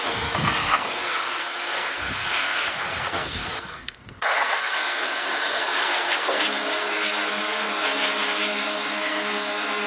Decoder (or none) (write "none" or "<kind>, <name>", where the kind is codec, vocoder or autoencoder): codec, SNAC